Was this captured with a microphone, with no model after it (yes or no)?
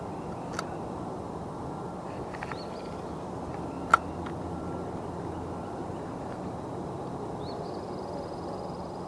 no